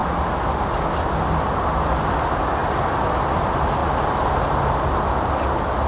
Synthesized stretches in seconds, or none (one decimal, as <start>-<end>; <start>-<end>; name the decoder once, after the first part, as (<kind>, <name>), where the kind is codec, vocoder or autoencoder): 2.6-3.4 (vocoder, BigVGAN v2); 3.8-5.3